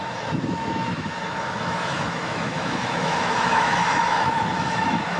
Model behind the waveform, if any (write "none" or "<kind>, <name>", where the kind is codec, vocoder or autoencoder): autoencoder, DAC-VAE